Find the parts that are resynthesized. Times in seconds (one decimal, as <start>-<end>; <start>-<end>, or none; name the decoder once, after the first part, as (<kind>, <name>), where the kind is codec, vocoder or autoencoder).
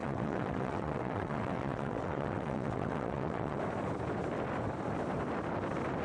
0.0-3.6 (vocoder, WaveNeXt)